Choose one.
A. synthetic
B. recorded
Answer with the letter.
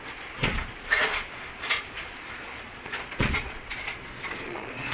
A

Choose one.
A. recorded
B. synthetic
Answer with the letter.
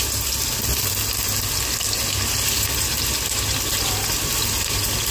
A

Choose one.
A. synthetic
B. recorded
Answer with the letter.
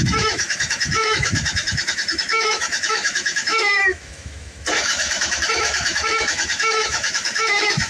A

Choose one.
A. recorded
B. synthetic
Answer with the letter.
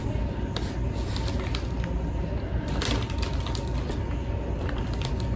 A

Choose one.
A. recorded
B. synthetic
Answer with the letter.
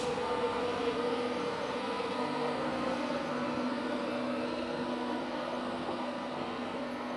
B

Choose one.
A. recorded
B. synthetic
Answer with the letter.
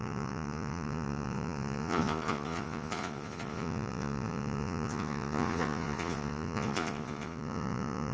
B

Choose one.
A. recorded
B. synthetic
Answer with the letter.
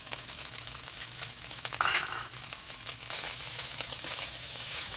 B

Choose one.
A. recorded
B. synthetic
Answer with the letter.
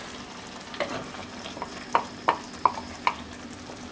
A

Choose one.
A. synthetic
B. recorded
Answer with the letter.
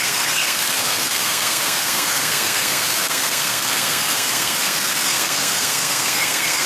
A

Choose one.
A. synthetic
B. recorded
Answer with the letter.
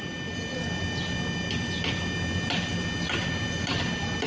B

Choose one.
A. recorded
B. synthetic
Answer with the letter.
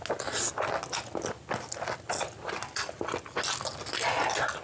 A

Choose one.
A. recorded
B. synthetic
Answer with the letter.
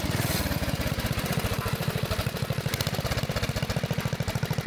A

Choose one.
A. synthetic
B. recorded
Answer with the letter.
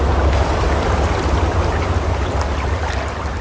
B